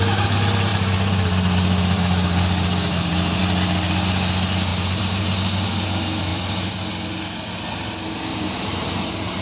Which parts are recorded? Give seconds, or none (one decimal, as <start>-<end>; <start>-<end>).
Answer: 0.0-0.7; 3.4-4.7; 5.2-8.3; 8.9-9.4